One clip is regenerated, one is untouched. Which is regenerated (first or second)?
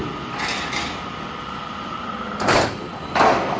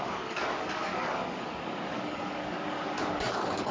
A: second